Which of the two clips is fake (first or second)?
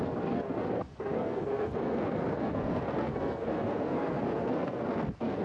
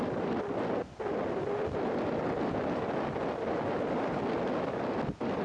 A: first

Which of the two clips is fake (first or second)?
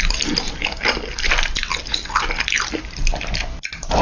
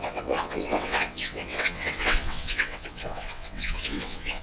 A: second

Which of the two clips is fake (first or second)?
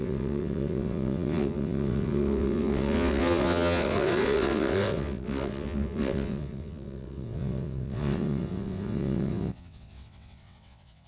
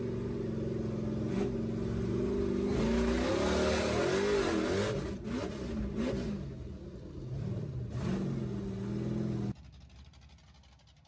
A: first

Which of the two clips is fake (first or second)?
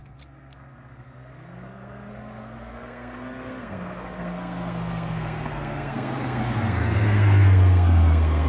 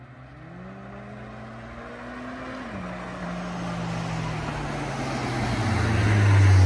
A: first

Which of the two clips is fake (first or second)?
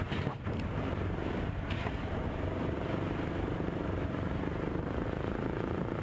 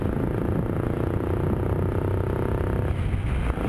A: first